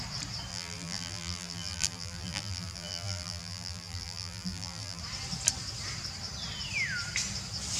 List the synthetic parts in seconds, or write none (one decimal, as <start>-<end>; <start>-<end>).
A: 0.5-5.0